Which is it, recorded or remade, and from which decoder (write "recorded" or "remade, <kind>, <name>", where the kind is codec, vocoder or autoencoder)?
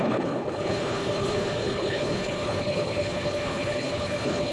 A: remade, codec, HILCodec